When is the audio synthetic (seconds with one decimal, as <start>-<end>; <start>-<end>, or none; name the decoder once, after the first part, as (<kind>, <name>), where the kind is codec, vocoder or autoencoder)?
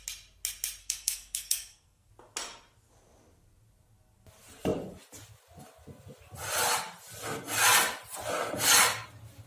0.8-2.1 (codec, SNAC)